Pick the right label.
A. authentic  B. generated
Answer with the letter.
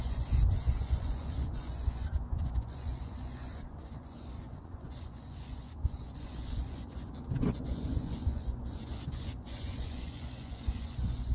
B